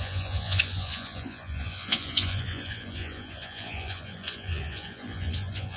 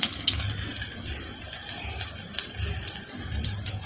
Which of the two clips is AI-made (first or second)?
first